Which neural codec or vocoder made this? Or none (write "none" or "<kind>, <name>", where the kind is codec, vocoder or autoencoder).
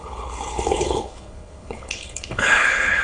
codec, HILCodec